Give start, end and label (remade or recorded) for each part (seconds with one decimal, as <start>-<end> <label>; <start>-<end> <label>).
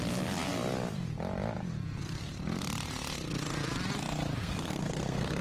0.0-4.4 recorded; 4.4-5.4 remade